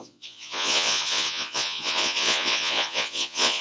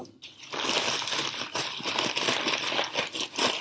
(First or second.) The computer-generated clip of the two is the first